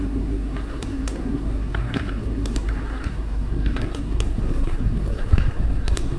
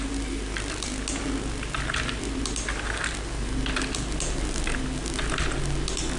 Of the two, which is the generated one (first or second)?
first